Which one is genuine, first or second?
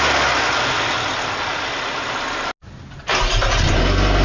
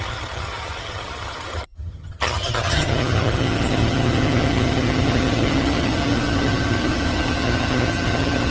first